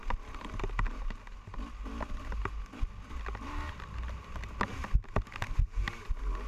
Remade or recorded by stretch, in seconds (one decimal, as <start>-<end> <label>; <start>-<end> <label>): 0.0-6.5 recorded